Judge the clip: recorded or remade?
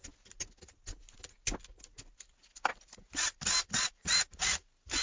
recorded